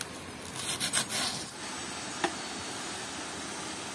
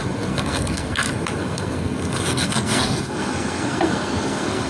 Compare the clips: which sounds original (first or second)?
first